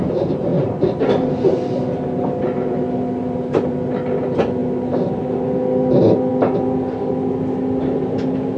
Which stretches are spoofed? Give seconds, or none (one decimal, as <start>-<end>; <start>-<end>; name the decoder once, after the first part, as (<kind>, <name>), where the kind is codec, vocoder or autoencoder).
none